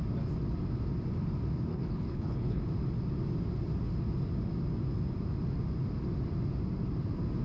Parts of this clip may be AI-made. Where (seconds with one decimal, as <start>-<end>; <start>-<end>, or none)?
1.7-2.6